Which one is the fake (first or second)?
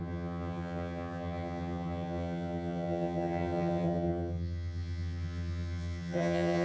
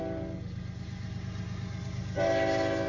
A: first